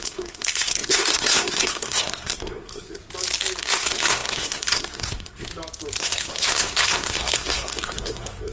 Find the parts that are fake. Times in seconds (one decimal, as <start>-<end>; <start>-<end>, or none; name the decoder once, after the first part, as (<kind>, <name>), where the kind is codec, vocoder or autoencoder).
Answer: 0.0-3.0 (codec, SNAC); 3.6-5.5; 6.0-8.5